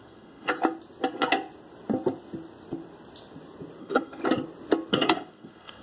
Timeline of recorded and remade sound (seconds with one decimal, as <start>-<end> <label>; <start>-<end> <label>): 0.0-0.5 remade; 0.5-3.8 recorded; 3.8-4.2 remade; 4.2-4.9 recorded; 4.9-5.8 remade

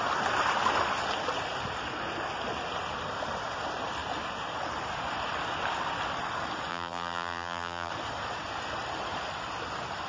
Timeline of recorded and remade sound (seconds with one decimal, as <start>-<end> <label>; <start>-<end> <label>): 0.0-6.7 recorded; 6.7-7.9 remade; 7.9-10.1 recorded

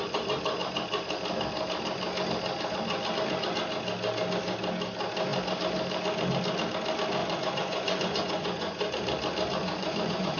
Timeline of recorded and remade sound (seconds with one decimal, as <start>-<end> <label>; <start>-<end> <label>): 0.0-7.2 recorded; 7.2-8.9 remade; 8.9-9.6 recorded; 9.6-10.4 remade

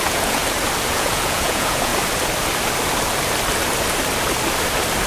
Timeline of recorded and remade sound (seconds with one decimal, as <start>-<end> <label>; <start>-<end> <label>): 0.0-0.4 remade; 0.4-0.9 recorded; 0.9-1.9 remade; 1.9-5.1 recorded

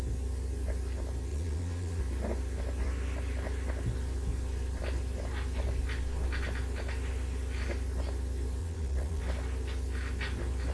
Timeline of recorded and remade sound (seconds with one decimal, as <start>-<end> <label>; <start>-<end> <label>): 0.0-1.3 recorded; 1.3-2.0 remade; 2.0-8.6 recorded; 8.6-9.2 remade; 9.2-10.7 recorded

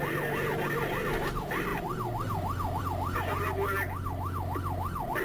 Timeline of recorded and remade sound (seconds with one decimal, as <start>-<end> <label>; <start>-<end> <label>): 0.0-5.2 recorded